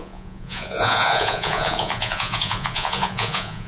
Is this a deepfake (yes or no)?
yes